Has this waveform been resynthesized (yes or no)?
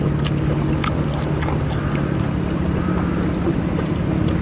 no